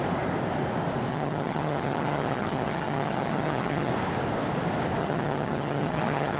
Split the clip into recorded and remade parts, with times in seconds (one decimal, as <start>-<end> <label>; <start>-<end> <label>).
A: 0.0-1.1 recorded; 1.1-3.9 remade; 3.9-5.0 recorded; 5.0-6.4 remade